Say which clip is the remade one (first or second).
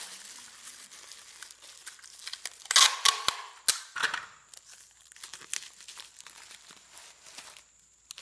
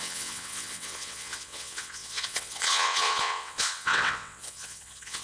second